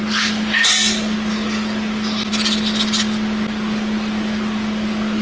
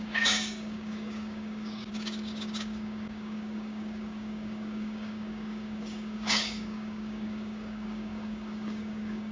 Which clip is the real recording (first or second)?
first